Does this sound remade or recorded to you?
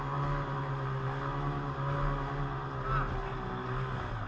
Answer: recorded